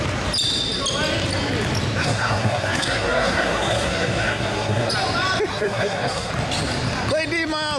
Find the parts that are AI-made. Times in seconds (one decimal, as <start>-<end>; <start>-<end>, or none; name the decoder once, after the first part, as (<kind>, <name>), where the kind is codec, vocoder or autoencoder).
2.0-4.9 (codec, SNAC); 5.5-6.3